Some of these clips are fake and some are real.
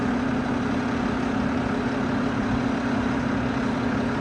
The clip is real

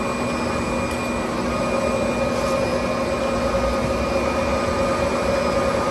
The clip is real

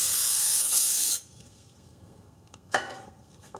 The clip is fake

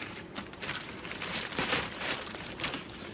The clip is fake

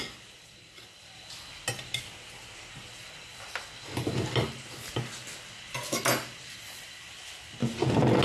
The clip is real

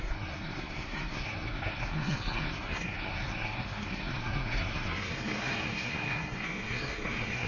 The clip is fake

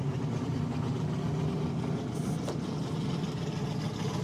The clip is real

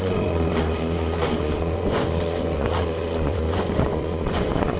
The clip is fake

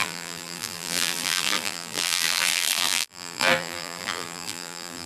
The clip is fake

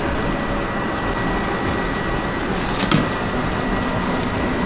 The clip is real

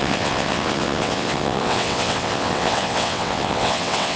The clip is fake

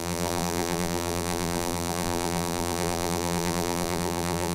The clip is fake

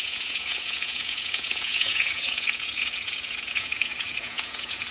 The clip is fake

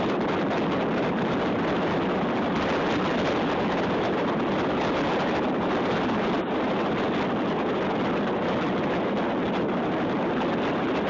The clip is real